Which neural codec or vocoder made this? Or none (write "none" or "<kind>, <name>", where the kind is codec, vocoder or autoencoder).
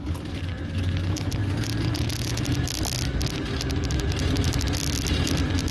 none